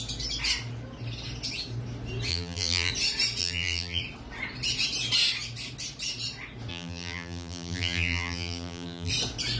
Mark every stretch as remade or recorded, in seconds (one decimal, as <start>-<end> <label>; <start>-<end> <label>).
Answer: 0.0-2.3 recorded; 2.3-2.9 remade; 2.9-3.4 recorded; 3.4-4.0 remade; 4.0-6.7 recorded; 6.7-9.1 remade; 9.1-9.6 recorded